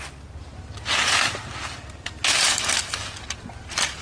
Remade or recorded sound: recorded